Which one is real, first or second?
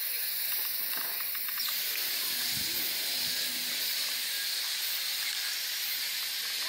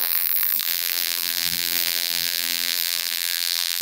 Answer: first